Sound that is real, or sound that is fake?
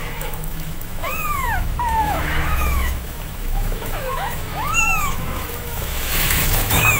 fake